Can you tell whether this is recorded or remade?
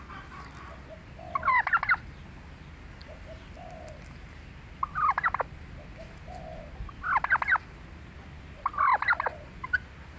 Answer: recorded